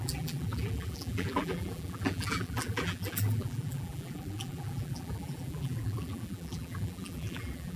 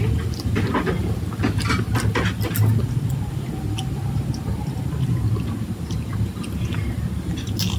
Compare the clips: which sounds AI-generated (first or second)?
first